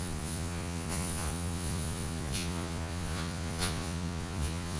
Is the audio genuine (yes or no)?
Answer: no